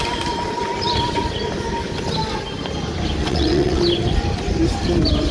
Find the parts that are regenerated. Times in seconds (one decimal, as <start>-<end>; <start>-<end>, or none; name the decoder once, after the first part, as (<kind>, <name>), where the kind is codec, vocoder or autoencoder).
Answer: 3.2-3.8 (vocoder, WaveNeXt)